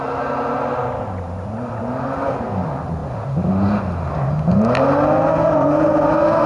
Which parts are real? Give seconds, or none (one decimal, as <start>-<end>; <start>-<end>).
0.0-6.5